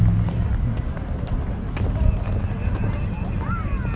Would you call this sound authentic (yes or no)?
yes